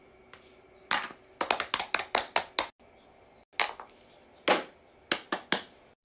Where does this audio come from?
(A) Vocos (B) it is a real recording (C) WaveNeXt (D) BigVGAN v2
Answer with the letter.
B